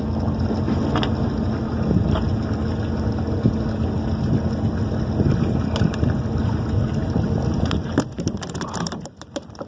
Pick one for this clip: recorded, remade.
recorded